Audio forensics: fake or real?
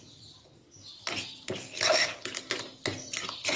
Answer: real